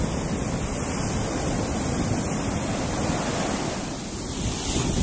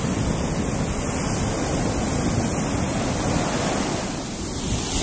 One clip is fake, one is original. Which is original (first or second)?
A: second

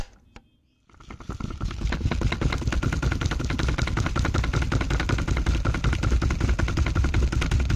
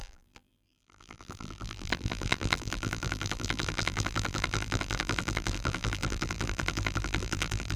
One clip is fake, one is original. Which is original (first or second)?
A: first